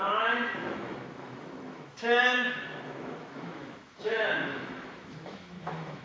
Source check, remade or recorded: remade